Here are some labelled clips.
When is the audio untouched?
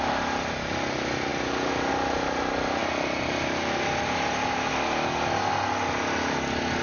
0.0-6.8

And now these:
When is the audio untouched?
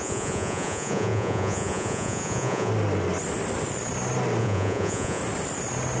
2.7-4.4; 5.2-6.0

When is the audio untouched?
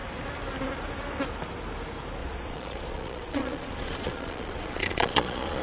0.0-2.2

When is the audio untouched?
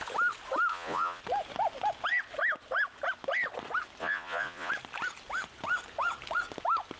0.0-0.7; 1.2-4.0; 4.7-7.0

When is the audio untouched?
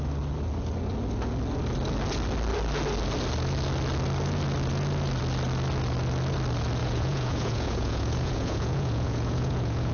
0.0-6.8